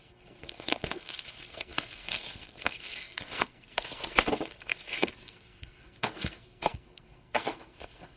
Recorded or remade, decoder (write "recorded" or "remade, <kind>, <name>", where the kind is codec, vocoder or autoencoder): remade, codec, SNAC